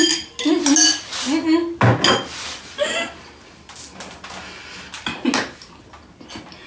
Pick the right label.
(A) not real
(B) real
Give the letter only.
B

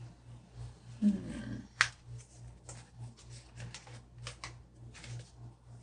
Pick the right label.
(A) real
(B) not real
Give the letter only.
A